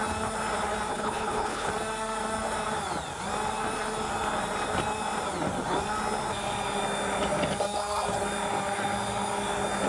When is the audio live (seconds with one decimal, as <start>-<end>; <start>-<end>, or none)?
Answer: 0.0-0.9; 1.7-9.9